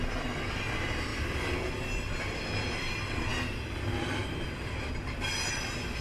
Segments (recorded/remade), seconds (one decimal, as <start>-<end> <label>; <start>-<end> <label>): 0.0-6.0 recorded